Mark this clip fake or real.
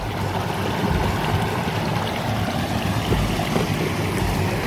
real